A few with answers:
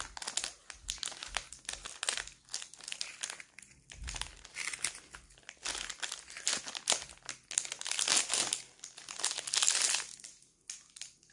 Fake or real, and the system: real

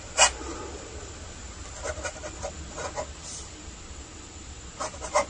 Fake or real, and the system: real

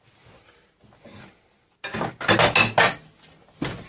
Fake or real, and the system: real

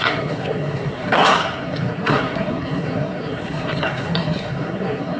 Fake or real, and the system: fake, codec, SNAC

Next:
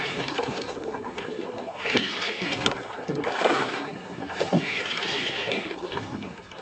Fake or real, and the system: fake, codec, SNAC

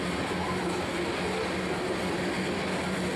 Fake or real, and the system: real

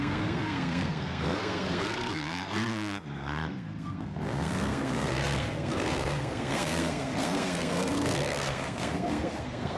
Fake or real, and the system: fake, codec, SNAC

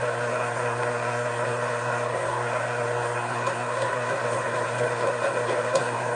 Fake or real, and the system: fake, codec, SNAC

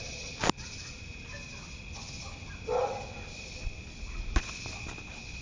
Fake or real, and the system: real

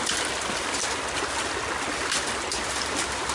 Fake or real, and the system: real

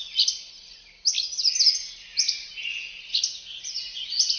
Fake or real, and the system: real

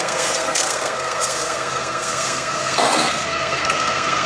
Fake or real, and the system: fake, codec, SNAC